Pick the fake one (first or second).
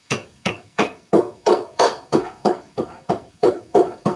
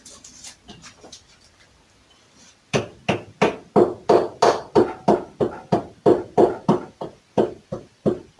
first